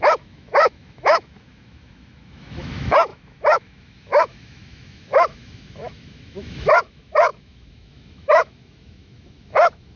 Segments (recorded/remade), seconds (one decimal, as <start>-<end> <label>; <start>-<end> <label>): 0.0-10.0 remade